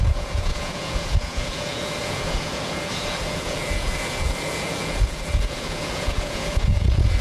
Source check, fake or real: fake